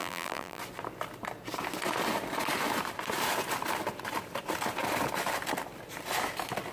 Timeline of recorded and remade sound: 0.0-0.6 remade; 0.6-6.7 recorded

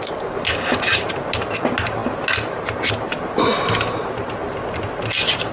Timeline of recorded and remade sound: 0.0-5.5 recorded

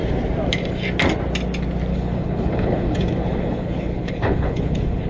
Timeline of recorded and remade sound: 0.0-1.9 recorded; 1.9-5.1 remade

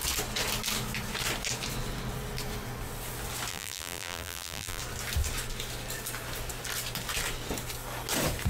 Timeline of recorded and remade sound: 0.0-3.5 recorded; 3.5-4.8 remade; 4.8-8.5 recorded

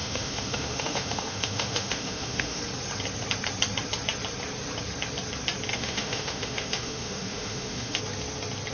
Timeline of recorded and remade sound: 0.0-2.6 remade; 2.6-5.7 recorded; 5.7-8.0 remade; 8.0-8.7 recorded

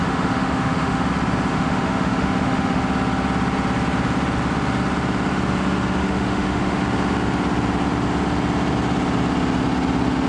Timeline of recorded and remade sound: 0.0-1.1 remade; 1.1-1.5 recorded; 1.5-2.8 remade; 2.8-6.0 recorded; 6.0-6.8 remade; 6.8-10.3 recorded

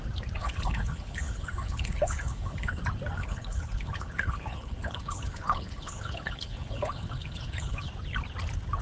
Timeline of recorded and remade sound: 0.0-0.4 recorded; 0.4-2.8 remade; 2.8-3.2 recorded; 3.2-7.9 remade; 7.9-8.8 recorded

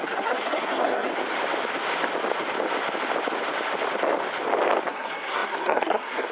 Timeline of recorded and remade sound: 0.0-1.1 remade; 1.1-4.9 recorded; 4.9-6.3 remade